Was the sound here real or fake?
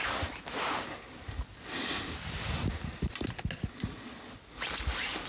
real